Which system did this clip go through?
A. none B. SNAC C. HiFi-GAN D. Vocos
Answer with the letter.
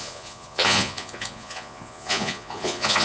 D